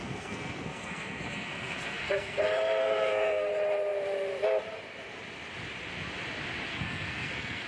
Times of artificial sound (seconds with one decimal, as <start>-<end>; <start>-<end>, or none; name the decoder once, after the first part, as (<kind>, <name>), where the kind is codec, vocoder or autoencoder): 0.0-2.4 (codec, SNAC); 2.8-3.5; 6.7-7.7